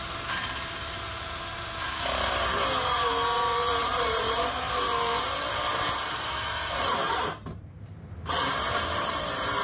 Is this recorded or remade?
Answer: remade